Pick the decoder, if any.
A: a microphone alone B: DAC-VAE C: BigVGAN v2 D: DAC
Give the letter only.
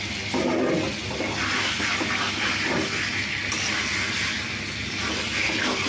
A